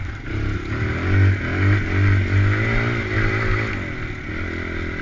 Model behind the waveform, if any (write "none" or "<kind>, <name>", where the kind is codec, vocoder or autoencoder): none